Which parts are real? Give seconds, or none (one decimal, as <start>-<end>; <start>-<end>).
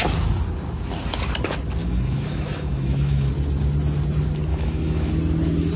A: 0.0-1.8; 3.3-4.5; 5.1-5.8